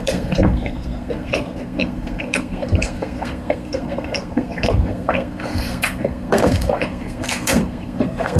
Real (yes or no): no